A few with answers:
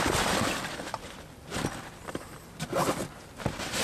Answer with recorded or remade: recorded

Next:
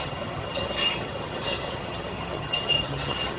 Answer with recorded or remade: remade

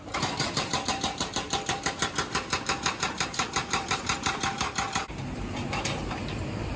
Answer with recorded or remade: remade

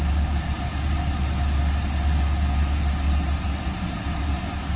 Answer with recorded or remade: recorded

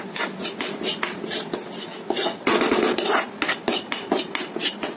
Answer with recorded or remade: recorded